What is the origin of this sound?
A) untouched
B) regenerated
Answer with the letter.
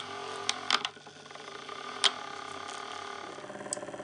A